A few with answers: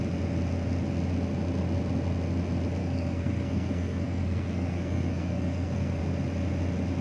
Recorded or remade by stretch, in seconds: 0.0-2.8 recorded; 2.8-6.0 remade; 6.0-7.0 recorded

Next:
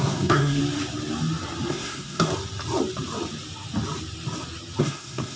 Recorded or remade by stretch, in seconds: 0.0-0.6 remade; 0.6-1.7 recorded; 1.7-2.3 remade; 2.3-4.8 recorded; 4.8-5.4 remade

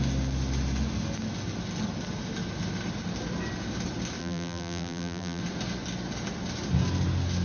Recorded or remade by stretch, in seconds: 0.0-4.2 recorded; 4.2-5.4 remade; 5.4-7.4 recorded

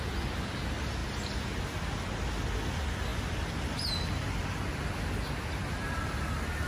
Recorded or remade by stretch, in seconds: 0.0-6.7 recorded

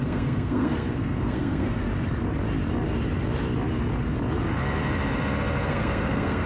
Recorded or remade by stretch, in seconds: 0.0-1.8 remade; 1.8-5.7 recorded; 5.7-6.5 remade

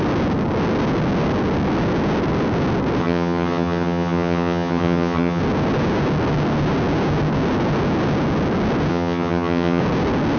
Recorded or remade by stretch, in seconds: 0.0-3.0 recorded; 3.0-5.4 remade; 5.4-8.9 recorded; 8.9-9.8 remade; 9.8-10.4 recorded

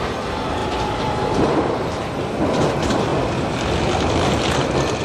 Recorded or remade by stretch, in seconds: 0.0-0.6 recorded; 0.6-2.1 remade; 2.1-5.0 recorded